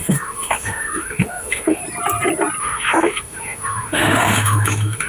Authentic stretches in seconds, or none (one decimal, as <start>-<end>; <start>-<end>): 1.8-2.6